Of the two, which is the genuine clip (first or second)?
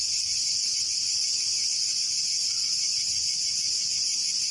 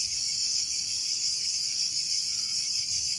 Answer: first